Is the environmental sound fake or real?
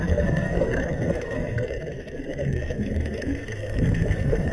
fake